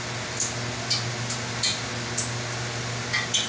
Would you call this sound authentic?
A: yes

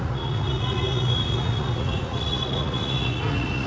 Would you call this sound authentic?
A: no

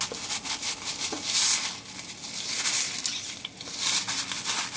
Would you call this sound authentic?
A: yes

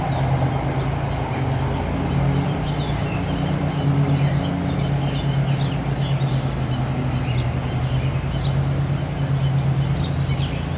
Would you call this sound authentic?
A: yes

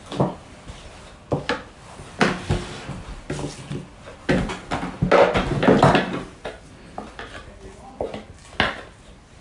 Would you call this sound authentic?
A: yes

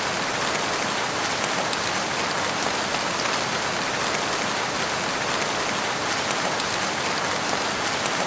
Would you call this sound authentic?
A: yes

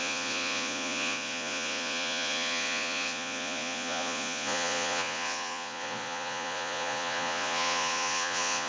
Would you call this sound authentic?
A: no